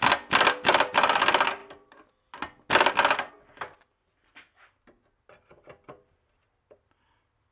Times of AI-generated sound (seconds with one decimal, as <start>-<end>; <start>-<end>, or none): none